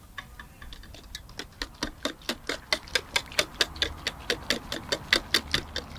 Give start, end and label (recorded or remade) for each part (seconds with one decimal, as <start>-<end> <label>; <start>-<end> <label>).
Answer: 0.0-6.0 recorded